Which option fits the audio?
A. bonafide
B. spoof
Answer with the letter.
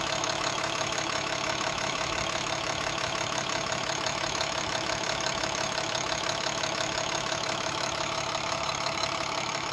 B